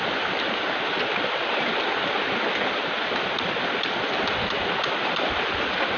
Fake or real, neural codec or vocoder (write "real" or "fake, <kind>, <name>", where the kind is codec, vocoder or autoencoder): real